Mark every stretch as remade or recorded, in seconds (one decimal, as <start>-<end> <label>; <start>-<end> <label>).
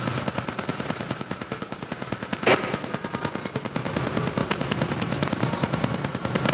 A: 0.0-0.7 recorded; 0.7-1.9 remade; 1.9-4.4 recorded; 4.4-6.5 remade